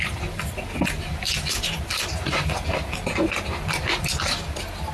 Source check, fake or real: real